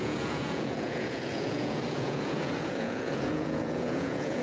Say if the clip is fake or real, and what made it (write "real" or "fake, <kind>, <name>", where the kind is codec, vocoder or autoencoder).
fake, vocoder, Vocos